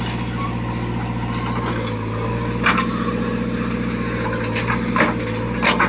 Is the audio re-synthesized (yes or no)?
no